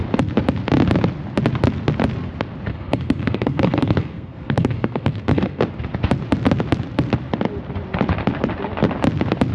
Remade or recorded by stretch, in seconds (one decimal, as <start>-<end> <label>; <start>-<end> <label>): 0.0-2.7 recorded; 2.7-5.6 remade; 5.6-9.5 recorded